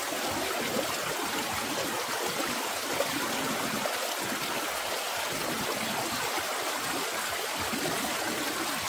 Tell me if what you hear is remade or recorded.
recorded